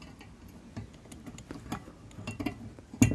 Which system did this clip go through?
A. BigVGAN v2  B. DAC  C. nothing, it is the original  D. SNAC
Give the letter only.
C